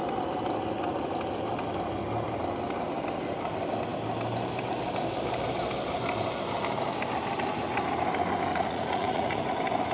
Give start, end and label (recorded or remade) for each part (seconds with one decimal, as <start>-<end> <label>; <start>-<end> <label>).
0.0-8.5 recorded; 8.5-9.5 remade; 9.5-9.9 recorded